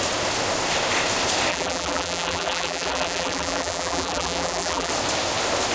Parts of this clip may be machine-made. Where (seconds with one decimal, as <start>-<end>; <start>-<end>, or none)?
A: 1.5-4.9

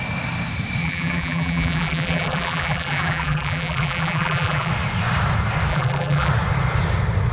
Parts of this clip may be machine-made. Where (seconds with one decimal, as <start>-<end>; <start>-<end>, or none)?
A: 0.8-4.7; 5.7-6.3

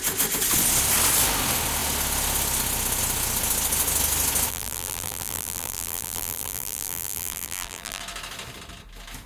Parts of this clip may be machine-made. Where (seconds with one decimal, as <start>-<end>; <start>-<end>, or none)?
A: 4.5-8.0

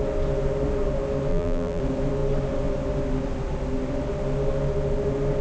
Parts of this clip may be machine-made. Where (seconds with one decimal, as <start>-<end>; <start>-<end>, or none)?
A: 1.3-1.8

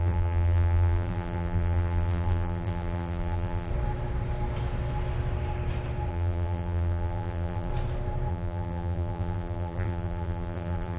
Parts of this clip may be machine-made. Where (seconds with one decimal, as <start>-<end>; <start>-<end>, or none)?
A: 0.0-3.7; 6.1-7.7; 8.3-11.0